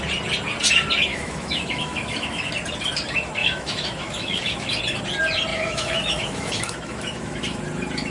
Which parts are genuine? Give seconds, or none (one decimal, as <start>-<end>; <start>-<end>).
0.0-1.1; 2.5-3.4; 4.8-5.5; 7.6-8.1